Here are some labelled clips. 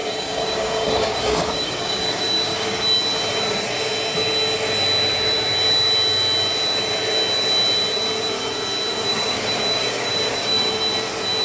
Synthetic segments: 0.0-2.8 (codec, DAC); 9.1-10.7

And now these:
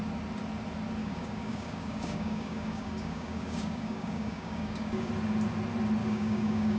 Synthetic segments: 1.0-5.1 (codec, DAC); 6.0-6.8